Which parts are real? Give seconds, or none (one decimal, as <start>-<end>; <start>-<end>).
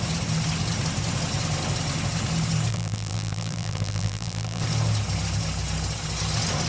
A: 0.0-2.7; 4.6-6.7